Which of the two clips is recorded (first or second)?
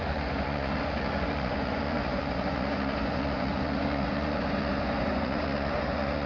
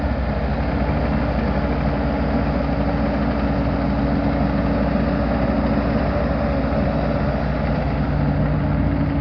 second